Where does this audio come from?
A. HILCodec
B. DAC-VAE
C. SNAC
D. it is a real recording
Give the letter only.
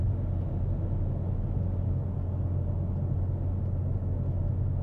D